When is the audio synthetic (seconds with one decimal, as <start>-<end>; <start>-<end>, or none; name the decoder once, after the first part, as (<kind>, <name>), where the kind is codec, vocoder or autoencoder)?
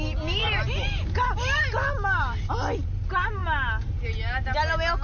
none